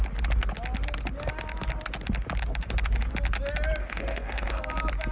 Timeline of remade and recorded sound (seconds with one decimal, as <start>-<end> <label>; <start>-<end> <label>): 0.0-3.8 recorded; 3.8-4.6 remade; 4.6-5.1 recorded